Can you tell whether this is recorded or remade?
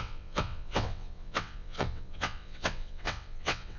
remade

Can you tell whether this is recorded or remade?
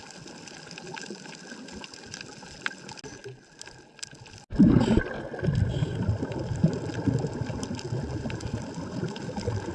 recorded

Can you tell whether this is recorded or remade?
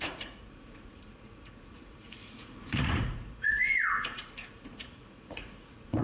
remade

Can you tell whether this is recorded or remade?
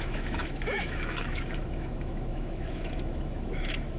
remade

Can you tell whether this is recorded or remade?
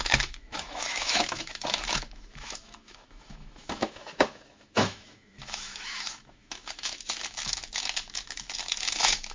remade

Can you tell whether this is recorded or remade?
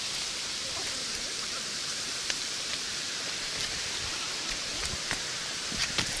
remade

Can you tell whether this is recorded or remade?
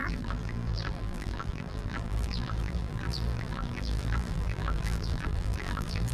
remade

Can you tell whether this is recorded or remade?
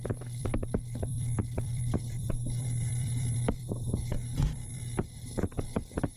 remade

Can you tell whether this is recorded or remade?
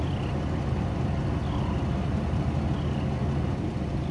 recorded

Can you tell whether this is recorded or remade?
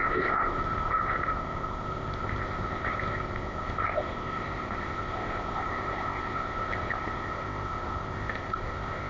remade